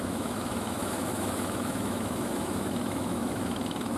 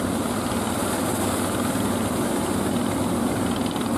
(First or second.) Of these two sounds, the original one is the second